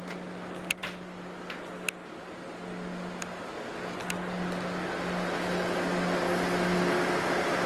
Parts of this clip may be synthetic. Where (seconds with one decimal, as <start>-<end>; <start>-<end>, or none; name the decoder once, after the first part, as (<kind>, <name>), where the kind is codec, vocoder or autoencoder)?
none